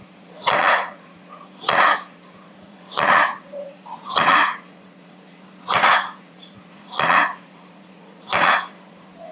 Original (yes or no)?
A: no